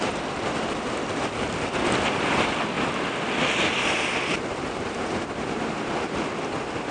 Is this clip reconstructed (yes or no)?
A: no